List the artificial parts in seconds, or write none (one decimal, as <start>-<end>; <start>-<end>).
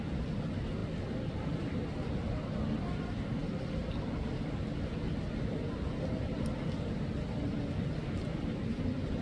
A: none